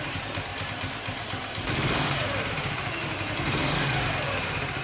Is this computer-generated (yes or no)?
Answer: yes